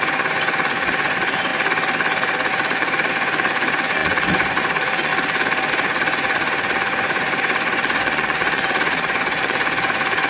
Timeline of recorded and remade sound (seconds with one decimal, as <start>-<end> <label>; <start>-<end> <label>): 0.0-1.5 remade; 1.5-2.5 recorded; 2.5-5.1 remade; 5.1-5.7 recorded; 5.7-10.3 remade